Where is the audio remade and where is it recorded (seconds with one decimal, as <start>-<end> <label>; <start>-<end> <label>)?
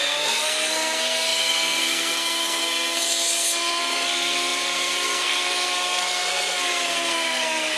0.0-7.8 remade